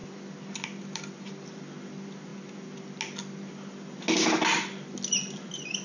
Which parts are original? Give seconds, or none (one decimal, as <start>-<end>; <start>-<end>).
0.0-5.8